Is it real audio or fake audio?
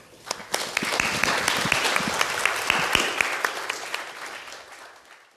real